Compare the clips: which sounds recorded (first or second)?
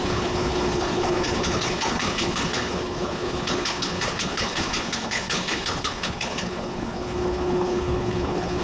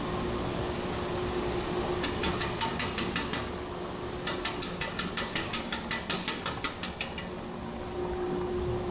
second